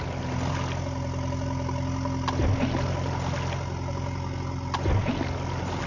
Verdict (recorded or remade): recorded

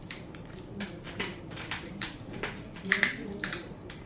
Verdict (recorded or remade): remade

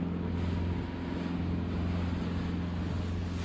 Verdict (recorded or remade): recorded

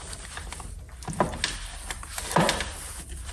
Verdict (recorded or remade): recorded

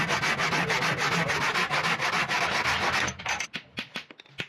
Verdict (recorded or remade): recorded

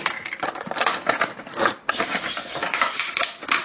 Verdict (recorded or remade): remade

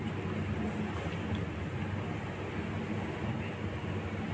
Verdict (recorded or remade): recorded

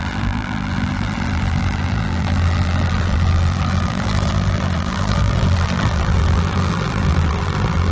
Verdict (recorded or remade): remade